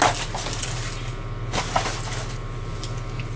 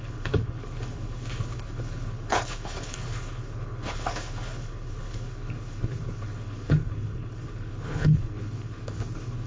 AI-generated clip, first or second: second